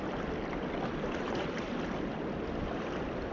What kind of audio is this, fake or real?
fake